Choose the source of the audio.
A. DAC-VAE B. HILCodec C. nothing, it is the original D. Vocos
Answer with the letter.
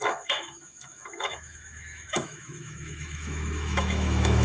A